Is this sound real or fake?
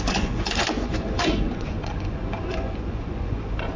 fake